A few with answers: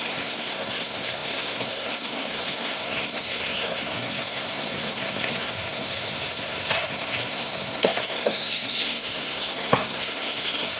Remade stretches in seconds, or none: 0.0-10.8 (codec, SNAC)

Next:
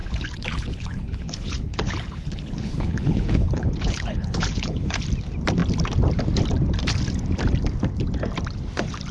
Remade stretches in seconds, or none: 0.0-5.0 (codec, HILCodec)

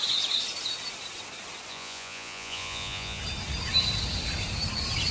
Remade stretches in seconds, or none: 1.7-3.2 (vocoder, Vocos)

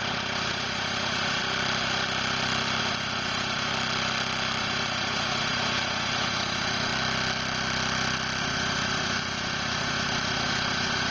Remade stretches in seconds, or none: 0.0-1.4 (vocoder, Vocos); 2.8-3.7; 4.6-6.9; 8.4-11.1

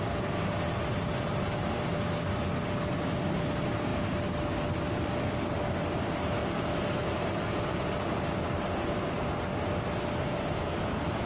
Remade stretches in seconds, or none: none

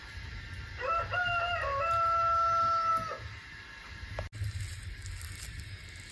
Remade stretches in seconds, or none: none

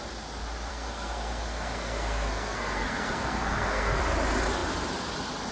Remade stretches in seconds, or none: 0.7-4.0 (codec, SNAC)